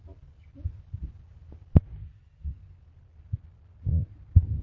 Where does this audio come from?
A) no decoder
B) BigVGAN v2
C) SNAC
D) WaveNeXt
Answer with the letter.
A